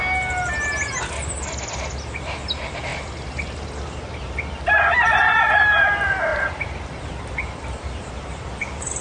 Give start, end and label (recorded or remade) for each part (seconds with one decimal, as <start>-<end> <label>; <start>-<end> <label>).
0.0-1.2 recorded; 1.2-2.4 remade; 2.4-6.3 recorded; 6.3-8.1 remade; 8.1-9.0 recorded